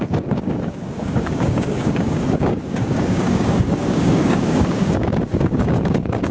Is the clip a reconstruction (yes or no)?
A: yes